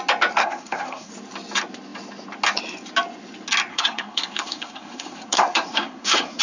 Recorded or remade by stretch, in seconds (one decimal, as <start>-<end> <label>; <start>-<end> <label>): 0.0-0.4 recorded; 0.4-1.1 remade; 1.1-3.7 recorded; 3.7-6.4 remade